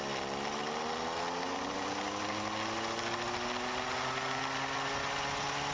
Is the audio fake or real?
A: real